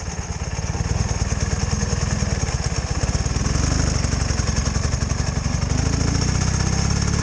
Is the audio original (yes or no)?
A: yes